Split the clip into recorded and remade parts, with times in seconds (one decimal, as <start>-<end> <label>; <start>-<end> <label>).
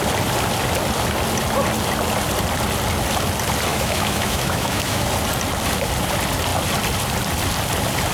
0.0-3.7 recorded; 3.7-5.1 remade; 5.1-8.1 recorded